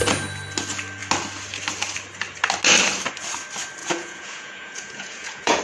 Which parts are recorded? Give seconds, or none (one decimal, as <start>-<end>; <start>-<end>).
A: 0.0-3.8